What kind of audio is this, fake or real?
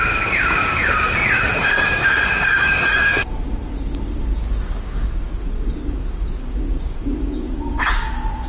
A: fake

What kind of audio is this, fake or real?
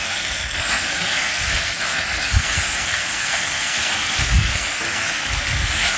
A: fake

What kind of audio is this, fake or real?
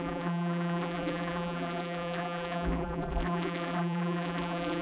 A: fake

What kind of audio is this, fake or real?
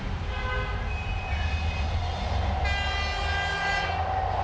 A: real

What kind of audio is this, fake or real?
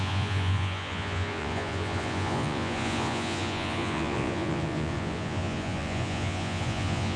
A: fake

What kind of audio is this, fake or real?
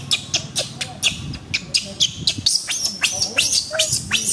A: real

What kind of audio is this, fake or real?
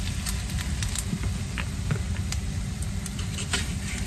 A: fake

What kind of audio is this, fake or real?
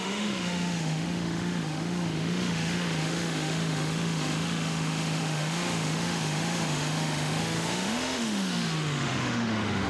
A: fake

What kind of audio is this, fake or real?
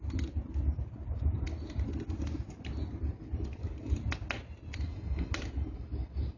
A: real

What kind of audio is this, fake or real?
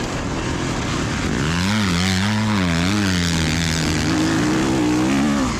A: real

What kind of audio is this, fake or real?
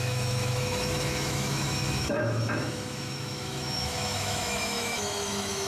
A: fake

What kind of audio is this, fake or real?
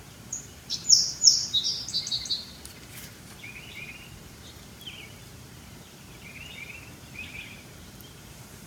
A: fake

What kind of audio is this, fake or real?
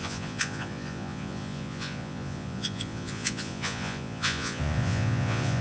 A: fake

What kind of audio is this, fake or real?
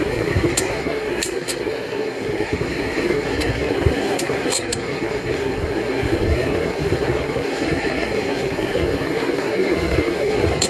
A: fake